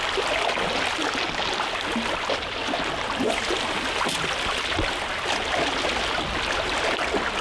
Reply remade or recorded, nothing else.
recorded